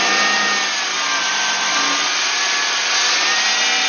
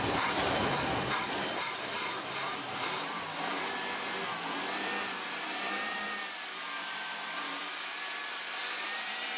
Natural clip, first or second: first